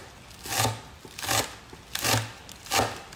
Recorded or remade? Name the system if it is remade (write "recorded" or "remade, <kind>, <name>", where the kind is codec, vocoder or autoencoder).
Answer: recorded